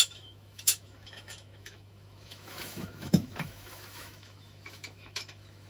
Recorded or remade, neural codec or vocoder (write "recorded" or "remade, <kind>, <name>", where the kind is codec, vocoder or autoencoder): remade, autoencoder, DAC-VAE